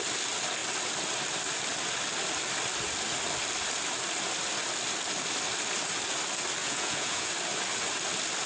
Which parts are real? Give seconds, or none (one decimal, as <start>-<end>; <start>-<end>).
0.0-6.6; 7.3-8.5